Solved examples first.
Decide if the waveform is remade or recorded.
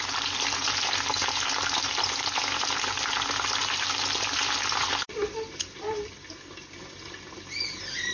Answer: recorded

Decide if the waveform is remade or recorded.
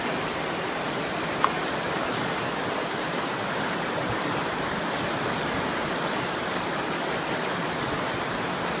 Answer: recorded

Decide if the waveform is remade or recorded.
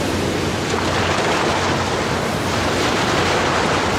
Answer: recorded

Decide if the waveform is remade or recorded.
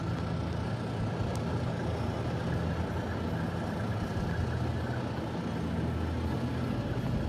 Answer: recorded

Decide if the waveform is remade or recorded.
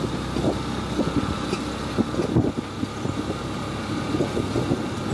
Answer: recorded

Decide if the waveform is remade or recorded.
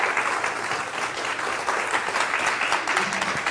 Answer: recorded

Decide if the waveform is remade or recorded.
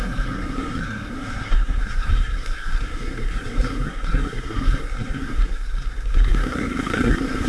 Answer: remade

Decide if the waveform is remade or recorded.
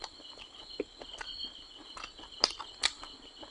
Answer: recorded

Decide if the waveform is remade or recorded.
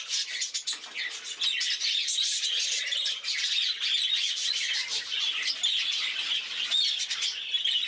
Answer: recorded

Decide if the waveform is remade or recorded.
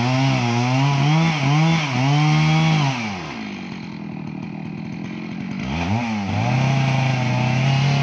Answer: recorded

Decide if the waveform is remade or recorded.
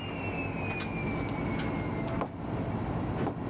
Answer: recorded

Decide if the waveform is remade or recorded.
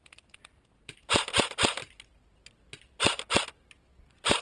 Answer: recorded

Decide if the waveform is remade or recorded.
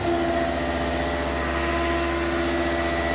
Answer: recorded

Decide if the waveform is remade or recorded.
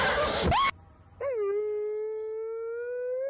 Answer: recorded